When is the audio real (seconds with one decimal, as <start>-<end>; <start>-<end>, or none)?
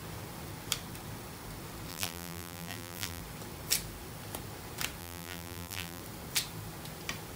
0.0-1.9; 3.2-5.0; 6.0-7.4